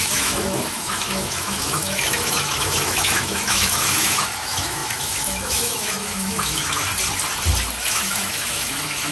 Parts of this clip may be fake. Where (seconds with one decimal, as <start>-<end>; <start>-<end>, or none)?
0.0-6.9; 7.8-9.1